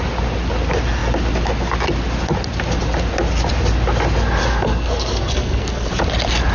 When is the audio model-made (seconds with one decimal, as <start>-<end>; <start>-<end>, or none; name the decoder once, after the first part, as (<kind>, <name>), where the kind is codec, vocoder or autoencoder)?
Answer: 4.4-5.9 (codec, SNAC)